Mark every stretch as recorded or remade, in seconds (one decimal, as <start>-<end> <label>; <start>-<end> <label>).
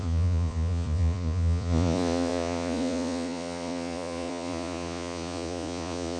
0.0-6.2 remade